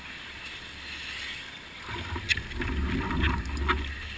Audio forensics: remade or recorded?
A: recorded